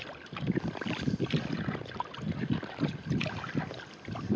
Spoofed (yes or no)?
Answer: no